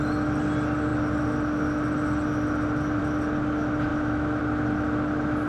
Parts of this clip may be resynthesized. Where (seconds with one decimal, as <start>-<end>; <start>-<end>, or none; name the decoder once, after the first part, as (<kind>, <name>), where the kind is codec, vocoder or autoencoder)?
3.9-4.4 (autoencoder, DAC-VAE)